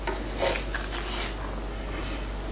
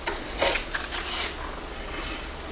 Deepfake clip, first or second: second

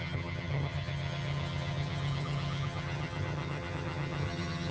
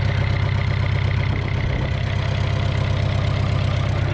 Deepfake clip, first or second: first